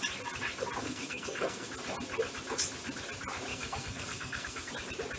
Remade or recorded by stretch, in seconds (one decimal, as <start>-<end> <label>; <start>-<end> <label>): 0.0-0.8 recorded; 0.8-1.7 remade; 1.7-3.5 recorded; 3.5-4.7 remade; 4.7-5.2 recorded